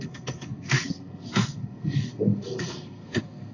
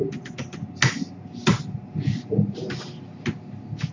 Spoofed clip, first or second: first